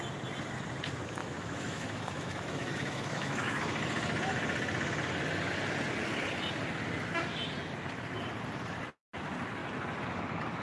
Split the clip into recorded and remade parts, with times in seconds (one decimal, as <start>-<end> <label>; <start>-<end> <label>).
0.0-1.2 recorded; 1.2-3.6 remade; 3.6-10.6 recorded